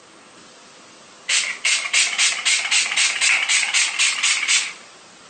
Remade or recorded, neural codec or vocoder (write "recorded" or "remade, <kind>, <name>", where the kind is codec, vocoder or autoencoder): recorded